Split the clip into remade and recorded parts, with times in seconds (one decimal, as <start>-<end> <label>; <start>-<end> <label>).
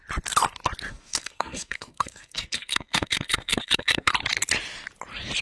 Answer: 0.0-0.9 recorded; 0.9-4.1 remade; 4.1-5.4 recorded